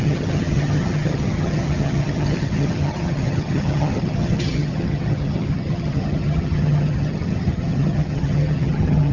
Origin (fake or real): fake